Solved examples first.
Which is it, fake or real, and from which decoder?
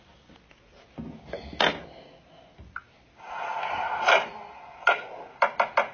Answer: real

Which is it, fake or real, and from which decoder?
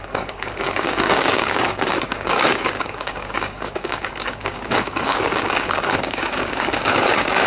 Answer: fake, codec, DAC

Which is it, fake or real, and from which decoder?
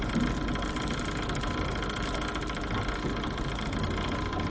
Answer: real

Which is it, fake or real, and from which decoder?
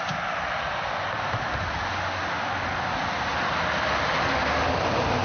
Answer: real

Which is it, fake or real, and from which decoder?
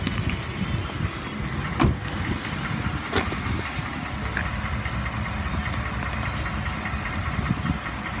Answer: real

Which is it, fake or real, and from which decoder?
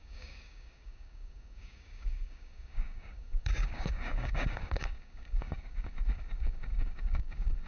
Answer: fake, codec, DAC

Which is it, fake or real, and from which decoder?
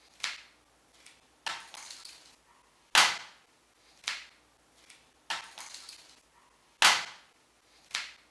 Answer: real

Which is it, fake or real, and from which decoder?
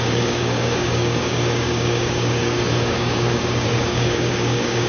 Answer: fake, codec, DAC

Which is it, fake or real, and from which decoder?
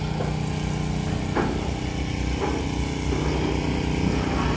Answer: real